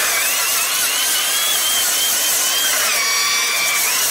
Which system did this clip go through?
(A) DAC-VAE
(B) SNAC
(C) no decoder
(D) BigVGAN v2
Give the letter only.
C